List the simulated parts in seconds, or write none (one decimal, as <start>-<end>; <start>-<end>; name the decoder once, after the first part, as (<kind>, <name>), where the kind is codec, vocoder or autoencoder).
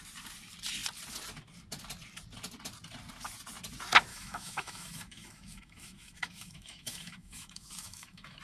4.1-8.4 (autoencoder, DAC-VAE)